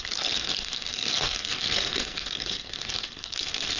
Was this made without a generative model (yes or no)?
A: no